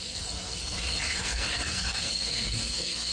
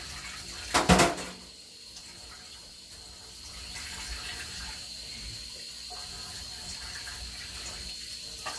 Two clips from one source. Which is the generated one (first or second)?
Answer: first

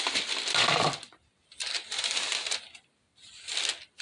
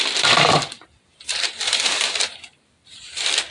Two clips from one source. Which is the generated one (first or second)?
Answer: second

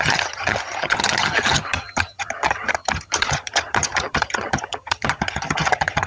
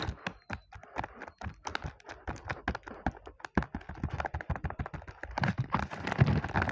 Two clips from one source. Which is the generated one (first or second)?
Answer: first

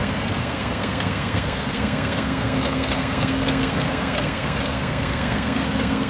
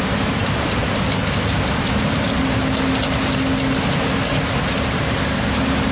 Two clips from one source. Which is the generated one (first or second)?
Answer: first